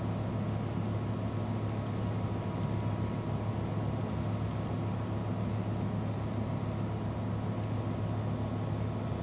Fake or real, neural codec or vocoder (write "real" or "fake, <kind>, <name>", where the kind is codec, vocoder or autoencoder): real